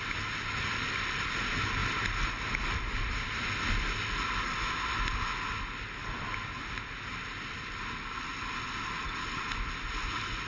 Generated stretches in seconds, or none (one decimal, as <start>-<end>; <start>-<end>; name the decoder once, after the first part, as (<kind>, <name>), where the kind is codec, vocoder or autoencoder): none